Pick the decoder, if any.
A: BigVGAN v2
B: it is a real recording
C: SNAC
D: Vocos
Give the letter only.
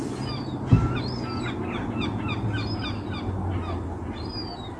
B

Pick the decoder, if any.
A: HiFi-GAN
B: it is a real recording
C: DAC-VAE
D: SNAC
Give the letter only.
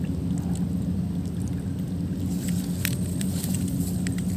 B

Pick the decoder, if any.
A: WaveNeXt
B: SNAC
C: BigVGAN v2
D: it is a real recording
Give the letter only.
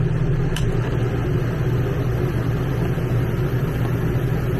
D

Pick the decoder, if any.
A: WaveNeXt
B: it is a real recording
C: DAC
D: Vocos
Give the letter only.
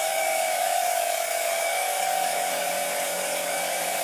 C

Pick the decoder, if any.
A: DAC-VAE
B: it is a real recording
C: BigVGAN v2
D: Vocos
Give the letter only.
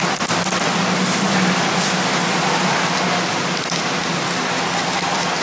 B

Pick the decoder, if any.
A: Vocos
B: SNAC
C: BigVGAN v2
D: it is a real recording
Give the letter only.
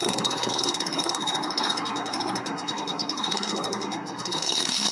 B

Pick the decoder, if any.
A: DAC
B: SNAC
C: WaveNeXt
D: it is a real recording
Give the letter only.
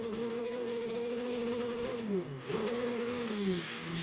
A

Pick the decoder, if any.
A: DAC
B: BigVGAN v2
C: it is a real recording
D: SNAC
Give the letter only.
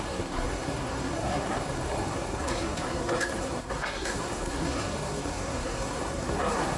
D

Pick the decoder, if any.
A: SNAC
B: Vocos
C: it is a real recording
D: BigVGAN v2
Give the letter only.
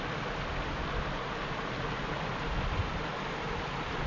C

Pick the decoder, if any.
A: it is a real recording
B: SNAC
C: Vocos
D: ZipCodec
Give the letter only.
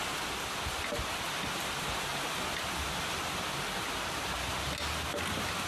A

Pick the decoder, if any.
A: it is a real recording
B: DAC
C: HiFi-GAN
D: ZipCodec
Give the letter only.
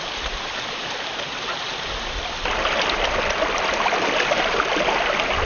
A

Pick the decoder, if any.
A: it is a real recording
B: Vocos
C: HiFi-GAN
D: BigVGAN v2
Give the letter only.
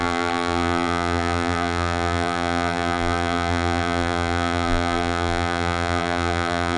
D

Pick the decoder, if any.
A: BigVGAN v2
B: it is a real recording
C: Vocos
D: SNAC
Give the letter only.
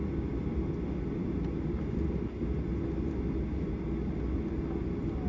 B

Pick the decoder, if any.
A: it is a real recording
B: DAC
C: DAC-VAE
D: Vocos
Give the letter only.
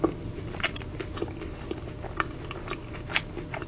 A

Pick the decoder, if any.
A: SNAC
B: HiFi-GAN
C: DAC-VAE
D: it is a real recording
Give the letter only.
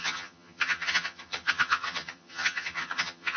B